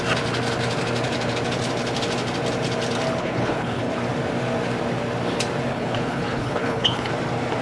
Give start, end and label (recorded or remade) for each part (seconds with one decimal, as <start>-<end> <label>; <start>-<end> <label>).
0.0-3.2 recorded; 3.2-3.9 remade; 3.9-5.7 recorded; 5.7-7.1 remade; 7.1-7.6 recorded